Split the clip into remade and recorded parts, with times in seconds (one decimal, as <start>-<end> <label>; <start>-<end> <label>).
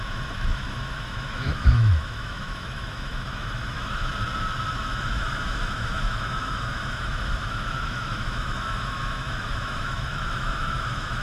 0.0-4.1 remade; 4.1-4.7 recorded; 4.7-11.2 remade